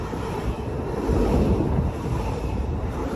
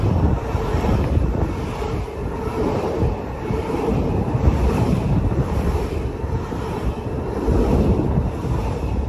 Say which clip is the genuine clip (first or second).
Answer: first